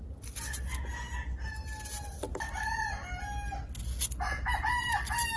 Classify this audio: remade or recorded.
recorded